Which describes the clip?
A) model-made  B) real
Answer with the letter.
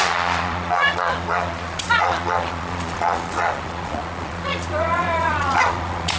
A